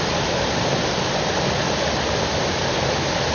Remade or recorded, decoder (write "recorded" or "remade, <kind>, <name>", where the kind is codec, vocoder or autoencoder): recorded